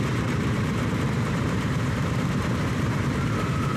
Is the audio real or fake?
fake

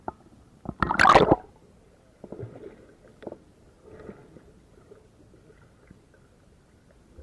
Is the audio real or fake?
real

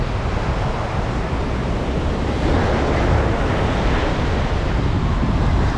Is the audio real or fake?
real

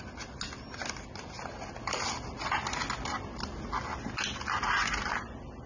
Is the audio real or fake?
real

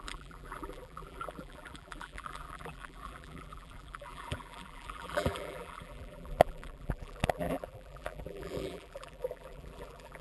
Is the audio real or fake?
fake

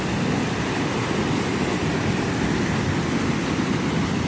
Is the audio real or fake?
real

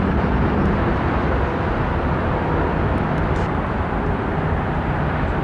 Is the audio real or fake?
fake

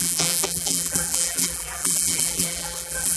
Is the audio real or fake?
fake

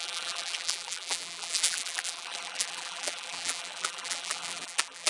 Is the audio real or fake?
fake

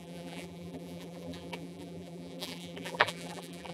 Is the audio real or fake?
fake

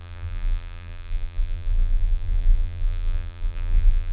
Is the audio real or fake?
fake